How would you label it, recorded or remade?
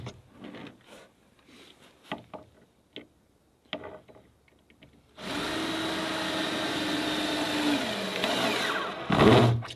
recorded